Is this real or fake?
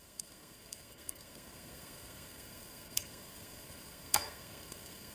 fake